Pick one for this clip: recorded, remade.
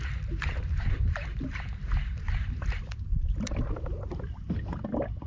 recorded